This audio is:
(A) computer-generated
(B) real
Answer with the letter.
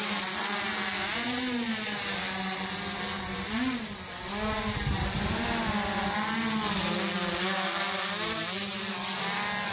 B